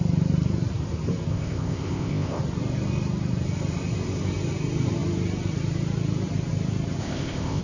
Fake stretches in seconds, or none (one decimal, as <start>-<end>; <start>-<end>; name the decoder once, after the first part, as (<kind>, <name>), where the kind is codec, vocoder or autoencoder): 1.3-2.4 (codec, ZipCodec); 7.0-7.6